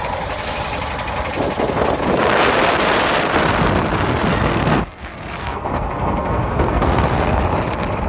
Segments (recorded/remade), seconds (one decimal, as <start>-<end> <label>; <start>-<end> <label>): 0.0-4.3 recorded; 4.3-7.4 remade; 7.4-8.1 recorded